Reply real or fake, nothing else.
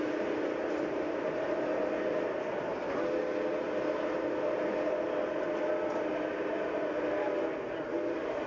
real